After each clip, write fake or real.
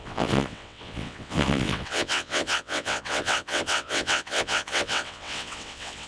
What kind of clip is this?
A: fake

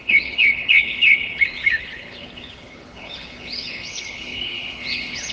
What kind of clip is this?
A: fake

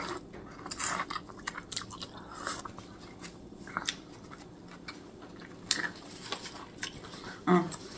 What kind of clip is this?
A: real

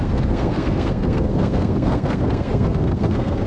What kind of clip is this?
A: fake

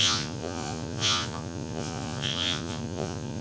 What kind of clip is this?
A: fake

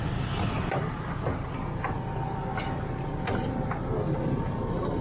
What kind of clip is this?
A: real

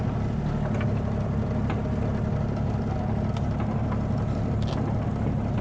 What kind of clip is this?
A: real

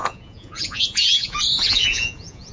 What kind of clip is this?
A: fake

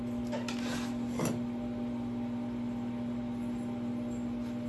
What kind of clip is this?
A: real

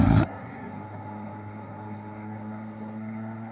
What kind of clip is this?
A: fake